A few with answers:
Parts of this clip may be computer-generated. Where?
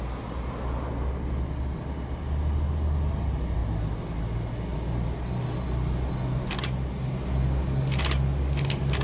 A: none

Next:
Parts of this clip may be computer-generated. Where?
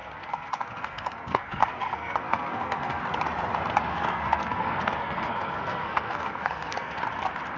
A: 0.0-3.0 (codec, SNAC); 3.9-7.0